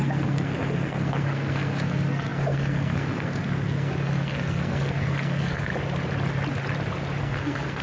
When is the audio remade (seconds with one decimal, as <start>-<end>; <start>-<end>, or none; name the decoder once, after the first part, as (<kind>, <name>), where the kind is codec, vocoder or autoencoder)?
0.0-5.7 (codec, SNAC); 7.2-7.8